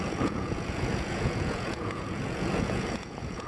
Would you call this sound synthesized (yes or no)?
yes